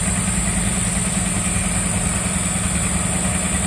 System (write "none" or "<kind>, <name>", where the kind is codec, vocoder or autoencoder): vocoder, BigVGAN v2